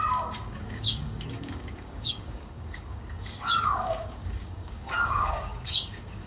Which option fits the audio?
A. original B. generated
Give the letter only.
B